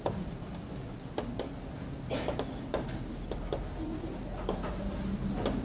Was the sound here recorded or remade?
recorded